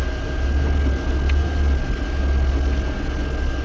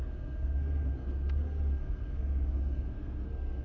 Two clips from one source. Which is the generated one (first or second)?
second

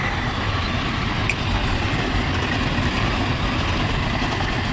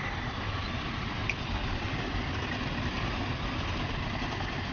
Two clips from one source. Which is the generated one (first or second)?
second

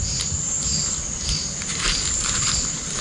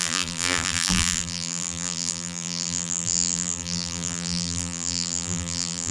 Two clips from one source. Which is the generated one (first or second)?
second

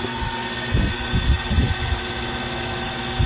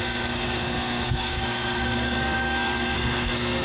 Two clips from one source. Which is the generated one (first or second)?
second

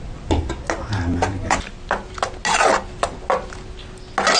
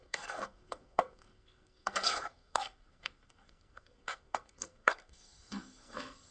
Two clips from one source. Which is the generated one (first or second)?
second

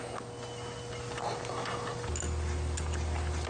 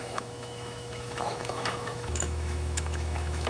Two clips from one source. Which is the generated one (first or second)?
second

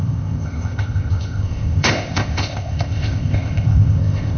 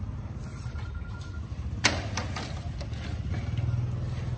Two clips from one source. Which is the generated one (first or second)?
first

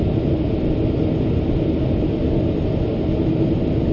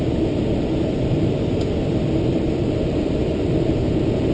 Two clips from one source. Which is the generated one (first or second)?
second